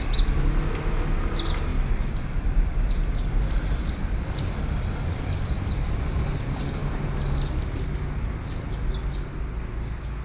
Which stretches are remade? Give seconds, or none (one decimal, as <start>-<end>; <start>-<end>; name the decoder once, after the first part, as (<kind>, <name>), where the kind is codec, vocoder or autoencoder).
1.7-6.9 (vocoder, BigVGAN v2)